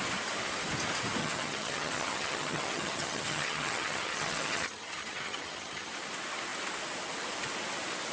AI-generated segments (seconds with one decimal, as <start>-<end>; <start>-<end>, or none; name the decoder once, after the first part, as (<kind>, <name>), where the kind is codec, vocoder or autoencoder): 1.2-5.9 (vocoder, HiFi-GAN)